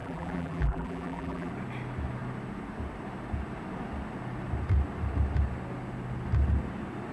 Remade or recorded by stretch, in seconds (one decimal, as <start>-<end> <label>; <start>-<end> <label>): 0.0-1.5 remade; 1.5-7.1 recorded